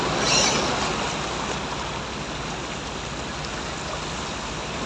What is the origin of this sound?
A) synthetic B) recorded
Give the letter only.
B